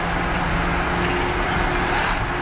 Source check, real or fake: real